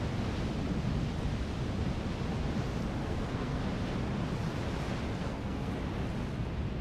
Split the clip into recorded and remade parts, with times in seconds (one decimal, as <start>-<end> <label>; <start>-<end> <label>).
0.0-3.0 recorded; 3.0-3.6 remade; 3.6-5.2 recorded; 5.2-5.7 remade; 5.7-6.8 recorded